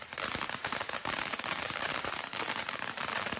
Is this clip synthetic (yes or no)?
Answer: yes